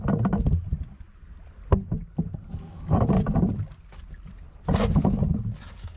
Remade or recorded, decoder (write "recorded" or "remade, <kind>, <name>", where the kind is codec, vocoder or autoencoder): recorded